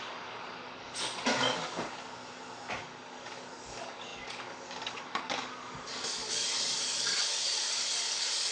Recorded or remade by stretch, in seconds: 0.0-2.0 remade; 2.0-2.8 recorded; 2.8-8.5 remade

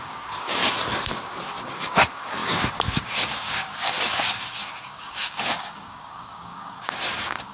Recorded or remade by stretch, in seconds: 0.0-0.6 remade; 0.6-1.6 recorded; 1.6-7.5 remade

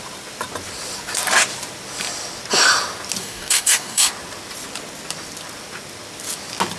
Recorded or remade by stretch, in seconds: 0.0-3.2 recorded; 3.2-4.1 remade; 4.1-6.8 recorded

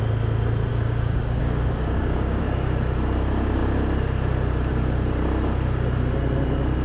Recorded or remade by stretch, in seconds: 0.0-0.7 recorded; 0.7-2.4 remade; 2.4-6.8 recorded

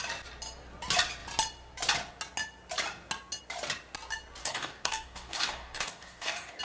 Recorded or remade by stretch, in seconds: 0.0-4.4 recorded; 4.4-6.6 remade

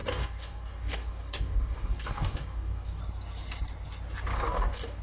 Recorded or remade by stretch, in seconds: 0.0-3.0 remade; 3.0-4.3 recorded; 4.3-5.0 remade

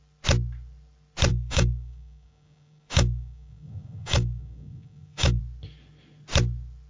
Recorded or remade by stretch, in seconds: 0.0-1.3 recorded; 1.3-5.4 remade; 5.4-6.9 recorded